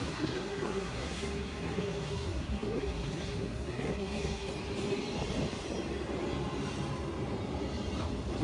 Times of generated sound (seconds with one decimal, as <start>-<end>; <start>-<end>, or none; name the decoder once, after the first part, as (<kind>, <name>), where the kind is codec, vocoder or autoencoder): 0.0-4.5 (codec, SNAC)

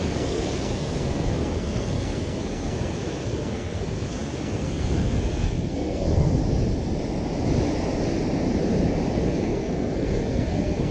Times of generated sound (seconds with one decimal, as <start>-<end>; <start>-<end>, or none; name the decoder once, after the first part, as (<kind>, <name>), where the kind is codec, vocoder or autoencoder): 0.0-6.4 (codec, SNAC); 9.1-10.9

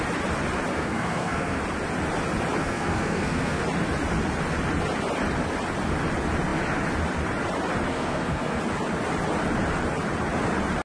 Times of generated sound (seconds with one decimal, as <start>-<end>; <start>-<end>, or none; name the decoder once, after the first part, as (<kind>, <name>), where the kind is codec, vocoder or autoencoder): 0.7-1.6 (codec, SNAC); 2.6-3.6; 7.9-8.6

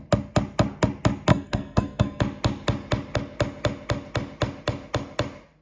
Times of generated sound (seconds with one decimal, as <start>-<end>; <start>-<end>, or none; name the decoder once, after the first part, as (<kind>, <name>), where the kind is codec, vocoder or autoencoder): 1.3-2.2 (codec, SNAC)

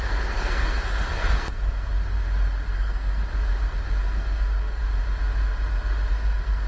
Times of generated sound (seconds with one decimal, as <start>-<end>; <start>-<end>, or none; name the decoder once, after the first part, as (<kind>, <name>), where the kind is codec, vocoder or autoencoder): 0.0-1.9 (codec, SNAC); 2.7-3.2; 4.0-4.8; 6.1-6.7

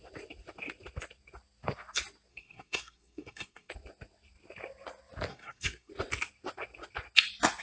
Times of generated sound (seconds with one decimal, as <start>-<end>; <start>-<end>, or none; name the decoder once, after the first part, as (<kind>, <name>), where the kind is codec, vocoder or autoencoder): 2.3-3.7 (codec, SNAC); 5.3-5.9

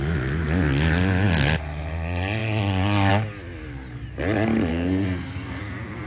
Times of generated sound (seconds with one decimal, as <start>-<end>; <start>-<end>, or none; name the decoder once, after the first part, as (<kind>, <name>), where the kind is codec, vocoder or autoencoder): 4.7-5.6 (codec, SNAC)